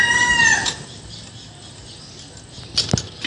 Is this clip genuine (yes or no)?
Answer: yes